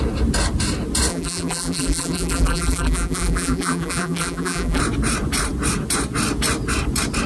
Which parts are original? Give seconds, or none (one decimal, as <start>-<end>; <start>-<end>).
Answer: 0.0-1.1; 4.8-7.3